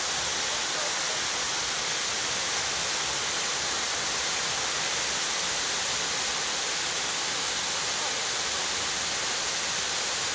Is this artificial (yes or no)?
no